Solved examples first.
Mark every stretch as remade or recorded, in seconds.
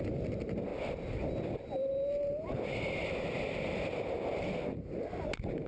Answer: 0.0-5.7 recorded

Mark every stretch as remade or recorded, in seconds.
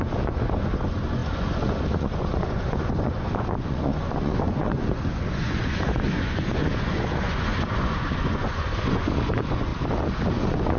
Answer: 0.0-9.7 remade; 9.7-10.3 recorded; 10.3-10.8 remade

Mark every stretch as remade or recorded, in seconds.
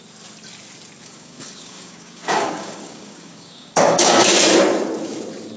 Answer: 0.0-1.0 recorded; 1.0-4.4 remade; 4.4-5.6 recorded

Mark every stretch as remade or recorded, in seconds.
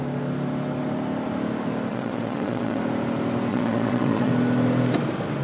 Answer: 0.0-1.9 recorded; 1.9-2.8 remade; 2.8-3.5 recorded; 3.5-4.3 remade; 4.3-5.4 recorded